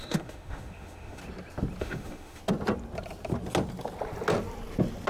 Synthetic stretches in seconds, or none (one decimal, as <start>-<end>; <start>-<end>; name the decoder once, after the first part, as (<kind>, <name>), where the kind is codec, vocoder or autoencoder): 0.0-1.2 (autoencoder, DAC-VAE); 1.8-2.4